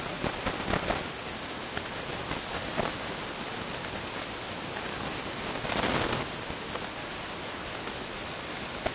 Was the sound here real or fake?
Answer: real